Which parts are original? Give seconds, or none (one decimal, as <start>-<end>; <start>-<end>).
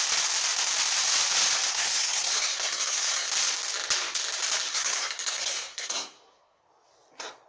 0.0-1.7; 3.3-4.7; 6.6-7.5